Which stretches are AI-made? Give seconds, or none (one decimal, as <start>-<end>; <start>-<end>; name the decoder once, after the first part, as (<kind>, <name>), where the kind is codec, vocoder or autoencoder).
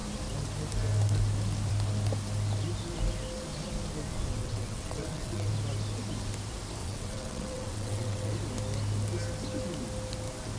4.4-5.5 (vocoder, WaveNeXt); 6.8-8.3